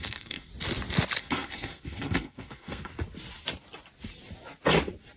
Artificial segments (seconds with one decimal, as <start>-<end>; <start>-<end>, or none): 0.0-0.5; 1.2-2.9